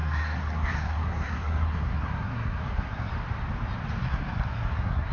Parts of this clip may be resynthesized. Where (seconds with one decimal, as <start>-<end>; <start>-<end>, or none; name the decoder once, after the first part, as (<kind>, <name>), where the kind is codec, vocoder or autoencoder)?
0.0-3.1 (codec, SNAC); 4.0-5.1